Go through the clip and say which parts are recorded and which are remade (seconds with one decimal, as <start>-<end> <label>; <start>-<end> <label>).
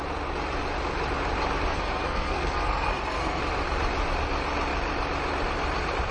0.0-1.7 recorded; 1.7-3.4 remade; 3.4-6.1 recorded